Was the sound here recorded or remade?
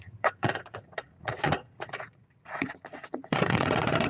remade